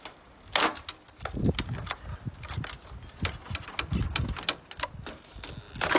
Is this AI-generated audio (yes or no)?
no